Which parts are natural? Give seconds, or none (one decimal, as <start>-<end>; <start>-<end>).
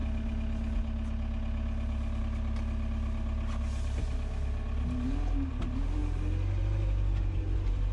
0.0-7.9